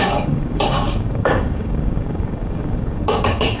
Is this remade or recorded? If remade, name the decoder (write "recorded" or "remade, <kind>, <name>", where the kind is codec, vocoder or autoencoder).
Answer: remade, codec, DAC